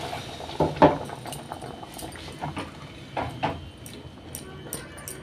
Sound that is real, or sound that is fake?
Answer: real